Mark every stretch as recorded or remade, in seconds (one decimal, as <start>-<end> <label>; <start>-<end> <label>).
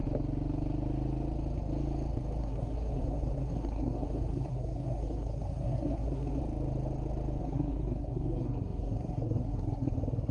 0.0-2.4 recorded; 2.4-6.4 remade; 6.4-7.4 recorded; 7.4-10.3 remade